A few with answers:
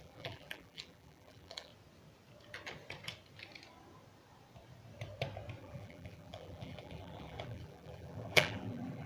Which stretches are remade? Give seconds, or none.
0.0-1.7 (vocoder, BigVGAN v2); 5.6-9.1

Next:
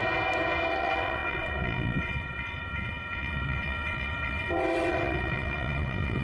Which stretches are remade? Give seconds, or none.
0.7-6.2 (vocoder, WaveNeXt)